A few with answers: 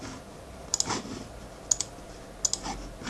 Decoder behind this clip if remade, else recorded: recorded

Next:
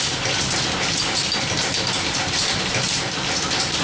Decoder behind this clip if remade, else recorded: recorded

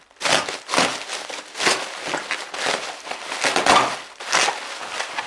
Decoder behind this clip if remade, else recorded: recorded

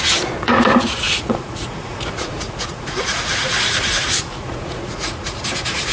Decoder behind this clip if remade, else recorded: remade, vocoder, Vocos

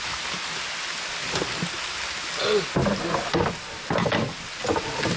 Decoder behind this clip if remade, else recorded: recorded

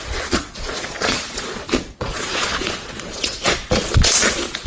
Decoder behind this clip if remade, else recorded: remade, vocoder, Vocos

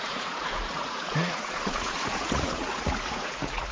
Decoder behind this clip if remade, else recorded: remade, vocoder, Vocos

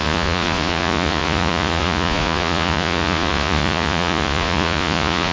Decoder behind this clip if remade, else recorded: remade, vocoder, Vocos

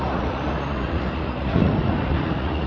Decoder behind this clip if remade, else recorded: remade, vocoder, Vocos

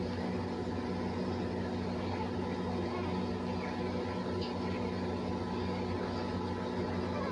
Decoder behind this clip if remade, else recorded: recorded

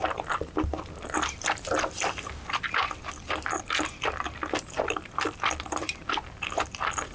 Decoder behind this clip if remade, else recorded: recorded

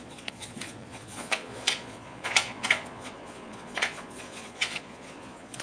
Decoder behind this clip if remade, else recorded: remade, vocoder, Vocos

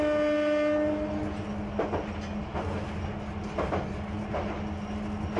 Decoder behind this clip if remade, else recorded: recorded